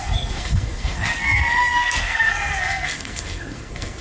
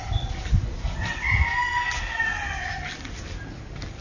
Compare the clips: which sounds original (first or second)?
second